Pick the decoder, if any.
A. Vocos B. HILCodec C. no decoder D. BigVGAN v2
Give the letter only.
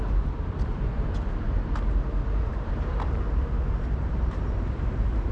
D